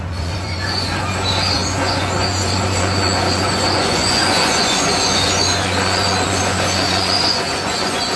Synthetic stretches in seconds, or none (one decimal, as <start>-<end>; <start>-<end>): 0.0-8.2